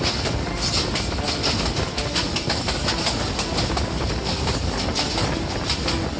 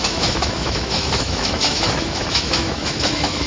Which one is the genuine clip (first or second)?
first